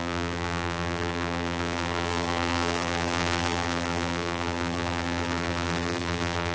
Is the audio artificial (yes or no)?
yes